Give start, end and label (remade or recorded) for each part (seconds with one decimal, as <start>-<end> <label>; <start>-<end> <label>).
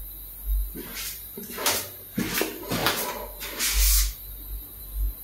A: 0.0-0.9 recorded; 0.9-2.2 remade; 2.2-5.2 recorded